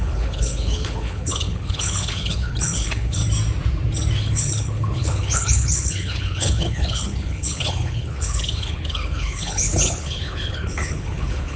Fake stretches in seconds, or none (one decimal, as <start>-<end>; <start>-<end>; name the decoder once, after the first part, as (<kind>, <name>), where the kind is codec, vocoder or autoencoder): 0.0-3.2 (codec, HILCodec); 4.2-11.6